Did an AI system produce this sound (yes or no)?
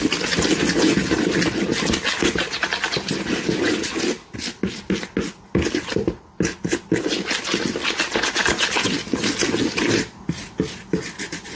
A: no